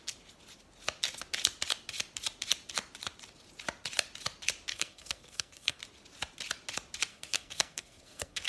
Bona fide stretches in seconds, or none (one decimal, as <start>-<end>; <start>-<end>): 0.0-4.7; 5.8-7.1